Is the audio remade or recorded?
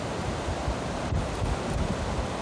recorded